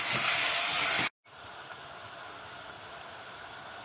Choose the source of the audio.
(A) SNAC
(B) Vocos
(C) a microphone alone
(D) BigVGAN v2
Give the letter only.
C